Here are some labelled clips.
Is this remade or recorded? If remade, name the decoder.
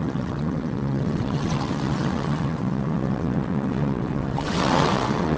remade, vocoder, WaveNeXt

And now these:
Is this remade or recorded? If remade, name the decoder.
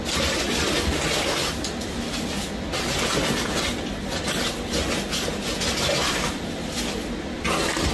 recorded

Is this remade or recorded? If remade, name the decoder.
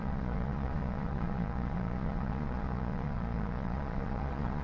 remade, vocoder, Vocos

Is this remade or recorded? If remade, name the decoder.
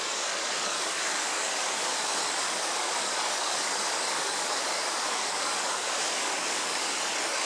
remade, codec, DAC